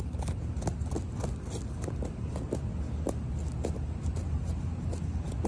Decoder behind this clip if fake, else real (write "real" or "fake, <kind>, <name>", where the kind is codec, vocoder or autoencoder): real